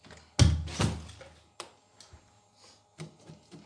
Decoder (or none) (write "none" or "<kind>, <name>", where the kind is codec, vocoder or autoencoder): none